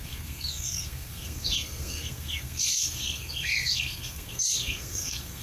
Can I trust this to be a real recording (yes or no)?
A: no